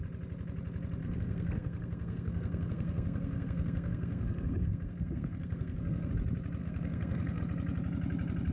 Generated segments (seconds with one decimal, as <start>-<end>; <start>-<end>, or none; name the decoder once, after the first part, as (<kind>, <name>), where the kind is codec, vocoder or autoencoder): 1.0-6.1 (codec, SNAC); 6.6-7.4